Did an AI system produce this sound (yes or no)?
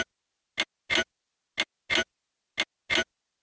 no